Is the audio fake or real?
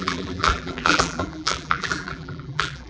fake